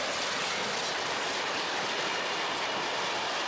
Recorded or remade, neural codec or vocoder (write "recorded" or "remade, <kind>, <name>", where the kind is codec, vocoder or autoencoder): recorded